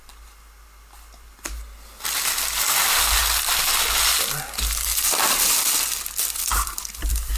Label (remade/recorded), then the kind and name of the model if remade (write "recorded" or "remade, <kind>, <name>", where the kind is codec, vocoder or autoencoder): recorded